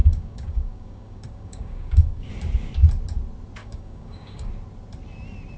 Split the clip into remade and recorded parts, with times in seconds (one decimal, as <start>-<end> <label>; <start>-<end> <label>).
0.0-2.3 remade; 2.3-3.6 recorded; 3.6-4.5 remade; 4.5-5.6 recorded